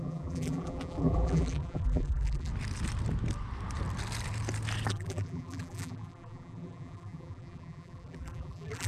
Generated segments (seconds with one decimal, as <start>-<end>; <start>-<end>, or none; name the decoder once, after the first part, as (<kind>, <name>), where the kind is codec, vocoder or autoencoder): 0.0-2.5 (vocoder, BigVGAN v2); 4.9-8.9